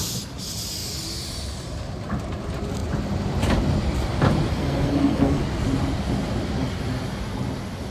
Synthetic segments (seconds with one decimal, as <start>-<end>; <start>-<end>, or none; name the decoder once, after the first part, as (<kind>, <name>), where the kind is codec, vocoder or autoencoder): 4.5-5.4 (codec, SNAC)